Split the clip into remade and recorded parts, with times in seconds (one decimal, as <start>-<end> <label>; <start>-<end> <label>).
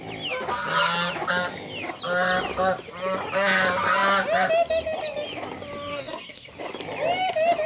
0.0-5.9 recorded; 5.9-6.5 remade; 6.5-7.7 recorded